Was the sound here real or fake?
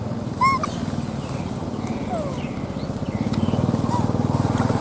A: real